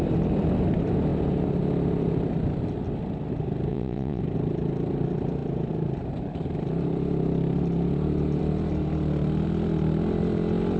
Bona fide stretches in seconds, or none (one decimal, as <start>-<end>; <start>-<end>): 0.0-3.7; 4.2-10.8